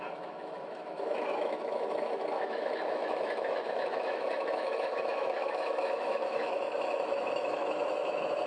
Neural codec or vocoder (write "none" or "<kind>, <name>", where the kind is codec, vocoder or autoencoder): autoencoder, DAC-VAE